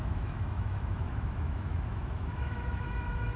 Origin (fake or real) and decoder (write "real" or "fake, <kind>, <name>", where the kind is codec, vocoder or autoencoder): fake, autoencoder, DAC-VAE